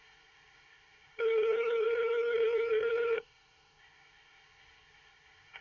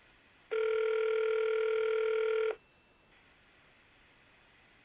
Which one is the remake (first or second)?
first